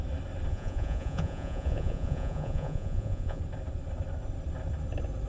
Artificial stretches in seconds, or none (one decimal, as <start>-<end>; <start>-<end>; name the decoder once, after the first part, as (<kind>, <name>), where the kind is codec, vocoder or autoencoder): 0.5-3.4 (vocoder, Vocos)